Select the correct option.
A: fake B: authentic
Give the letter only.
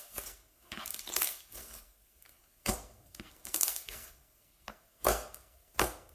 A